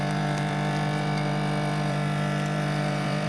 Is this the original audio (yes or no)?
no